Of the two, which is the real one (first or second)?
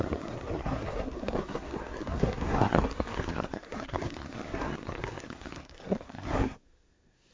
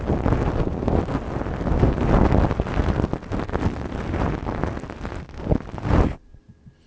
second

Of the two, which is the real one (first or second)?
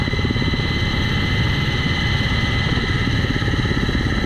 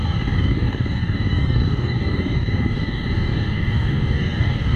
first